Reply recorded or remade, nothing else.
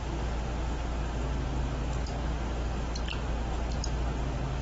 recorded